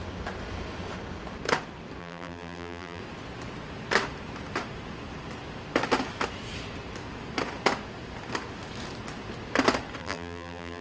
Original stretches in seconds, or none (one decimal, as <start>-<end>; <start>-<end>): 0.0-2.0; 3.0-10.0